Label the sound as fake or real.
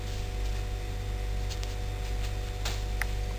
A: real